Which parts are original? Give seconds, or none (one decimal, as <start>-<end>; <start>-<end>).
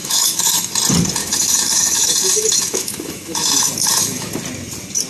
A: 0.7-1.2; 4.3-5.1